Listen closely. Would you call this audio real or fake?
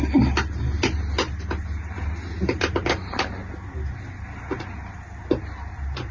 real